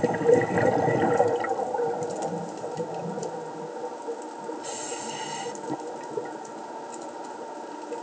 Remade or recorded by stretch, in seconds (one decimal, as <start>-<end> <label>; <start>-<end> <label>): 0.0-8.0 recorded